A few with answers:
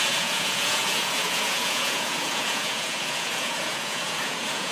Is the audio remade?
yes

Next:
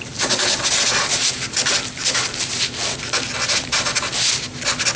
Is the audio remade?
no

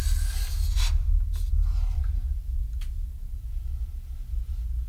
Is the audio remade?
no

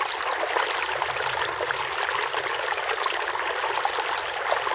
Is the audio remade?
no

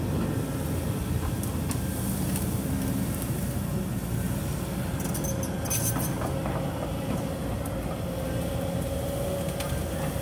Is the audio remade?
no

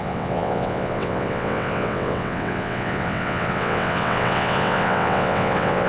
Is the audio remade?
yes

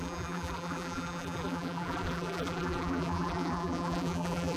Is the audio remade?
yes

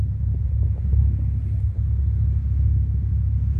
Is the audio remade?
no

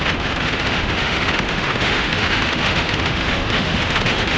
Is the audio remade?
yes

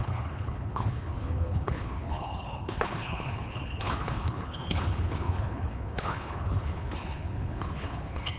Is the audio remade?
yes